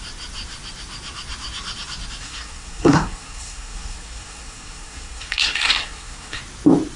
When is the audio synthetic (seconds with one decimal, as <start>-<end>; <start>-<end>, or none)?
2.2-6.4